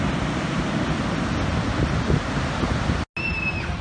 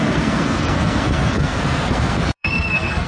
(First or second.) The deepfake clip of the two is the second